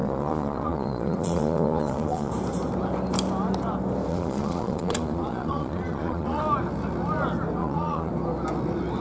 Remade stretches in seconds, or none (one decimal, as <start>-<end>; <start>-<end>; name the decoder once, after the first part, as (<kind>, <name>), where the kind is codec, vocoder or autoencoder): 0.0-2.3 (vocoder, Vocos); 4.1-6.4; 7.6-8.1